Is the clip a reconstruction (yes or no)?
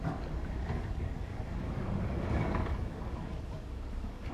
yes